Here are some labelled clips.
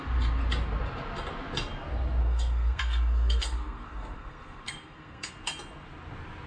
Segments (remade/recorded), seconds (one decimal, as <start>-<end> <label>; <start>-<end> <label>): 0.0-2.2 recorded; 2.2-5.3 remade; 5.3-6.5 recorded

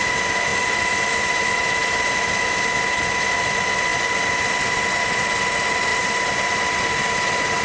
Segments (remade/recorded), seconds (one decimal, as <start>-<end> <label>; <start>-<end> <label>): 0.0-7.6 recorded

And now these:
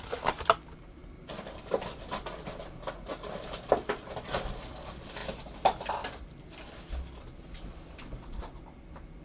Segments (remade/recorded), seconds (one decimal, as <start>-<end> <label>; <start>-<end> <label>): 0.0-9.2 recorded